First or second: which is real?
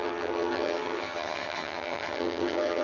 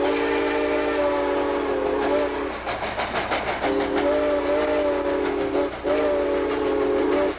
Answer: second